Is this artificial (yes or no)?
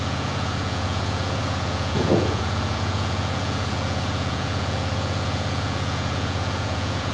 yes